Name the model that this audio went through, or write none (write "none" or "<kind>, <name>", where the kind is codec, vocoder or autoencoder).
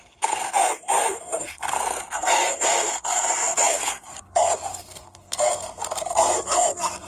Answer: codec, SNAC